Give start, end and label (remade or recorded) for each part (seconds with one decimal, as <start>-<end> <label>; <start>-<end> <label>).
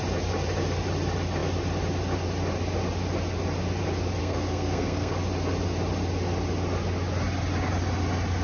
0.0-4.2 recorded; 4.2-5.1 remade; 5.1-8.4 recorded